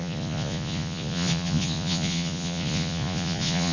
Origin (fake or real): fake